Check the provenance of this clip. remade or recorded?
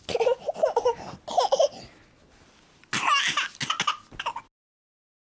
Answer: recorded